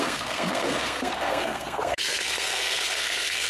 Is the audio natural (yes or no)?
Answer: no